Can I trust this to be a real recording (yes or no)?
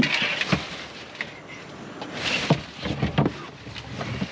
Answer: yes